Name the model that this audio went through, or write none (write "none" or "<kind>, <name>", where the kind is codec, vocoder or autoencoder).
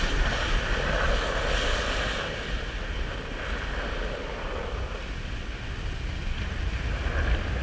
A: none